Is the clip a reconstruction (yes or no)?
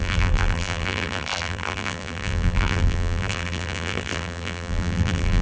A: yes